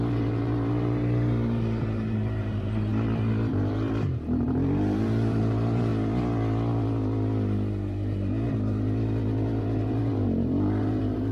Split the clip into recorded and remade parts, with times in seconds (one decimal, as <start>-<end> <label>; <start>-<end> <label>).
0.0-2.9 remade; 2.9-3.5 recorded; 3.5-5.9 remade; 5.9-9.6 recorded; 9.6-11.3 remade